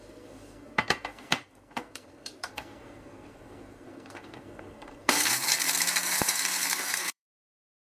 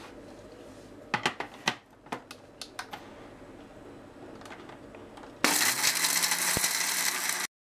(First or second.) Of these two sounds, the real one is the second